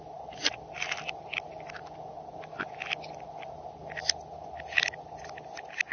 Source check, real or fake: real